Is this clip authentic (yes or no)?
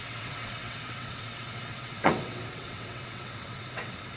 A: no